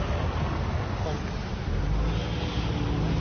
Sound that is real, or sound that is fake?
real